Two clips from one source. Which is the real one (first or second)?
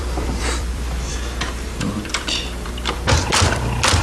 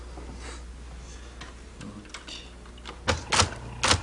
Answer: second